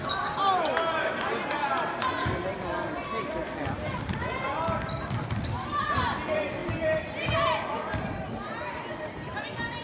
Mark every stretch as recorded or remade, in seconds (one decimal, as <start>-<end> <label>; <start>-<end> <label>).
0.0-9.8 recorded